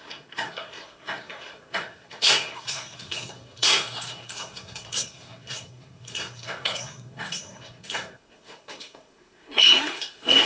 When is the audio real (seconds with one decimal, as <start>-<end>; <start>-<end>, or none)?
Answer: none